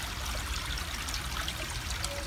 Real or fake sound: real